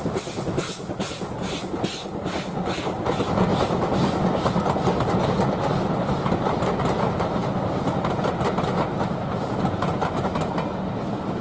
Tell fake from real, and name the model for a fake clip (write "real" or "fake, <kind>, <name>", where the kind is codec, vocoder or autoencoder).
real